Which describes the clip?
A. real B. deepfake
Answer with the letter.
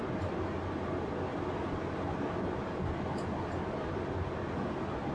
A